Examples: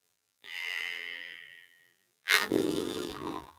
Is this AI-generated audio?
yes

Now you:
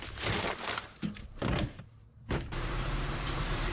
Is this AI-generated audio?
yes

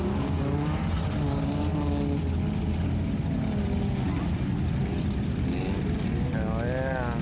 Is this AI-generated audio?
no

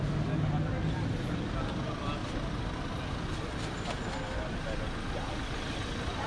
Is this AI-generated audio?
no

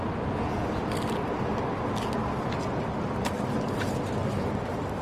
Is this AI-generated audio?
no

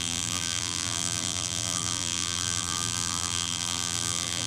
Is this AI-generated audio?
yes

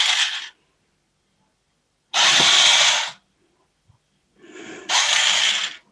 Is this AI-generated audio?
no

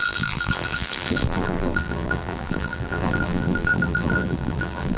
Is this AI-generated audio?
yes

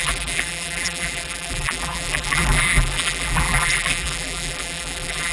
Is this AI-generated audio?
yes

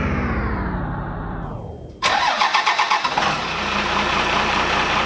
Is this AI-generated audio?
yes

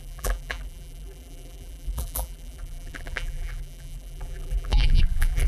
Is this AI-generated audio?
yes